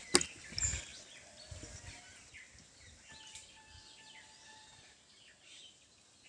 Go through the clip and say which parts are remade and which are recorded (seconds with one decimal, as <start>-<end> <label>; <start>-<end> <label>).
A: 0.0-6.3 recorded